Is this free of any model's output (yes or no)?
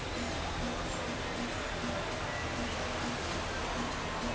yes